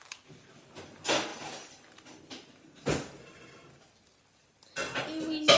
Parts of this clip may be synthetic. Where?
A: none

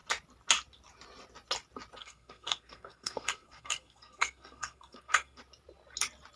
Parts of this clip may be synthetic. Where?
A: 2.0-5.4 (codec, SNAC)

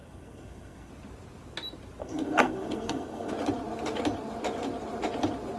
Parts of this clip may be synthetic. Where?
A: 0.0-0.9 (codec, SNAC); 2.0-3.3

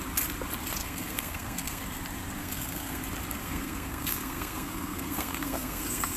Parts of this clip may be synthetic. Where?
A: 0.8-1.8 (codec, SNAC); 2.4-3.0; 3.4-6.2